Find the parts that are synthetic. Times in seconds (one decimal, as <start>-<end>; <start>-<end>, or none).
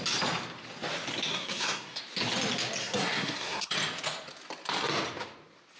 1.3-2.0; 2.8-3.7